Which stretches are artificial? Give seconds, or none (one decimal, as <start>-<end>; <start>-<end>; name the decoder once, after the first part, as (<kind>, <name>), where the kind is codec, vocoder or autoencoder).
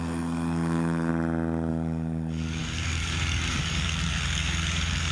0.0-1.1 (codec, DAC); 1.7-5.1